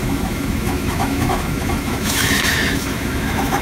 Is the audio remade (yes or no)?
yes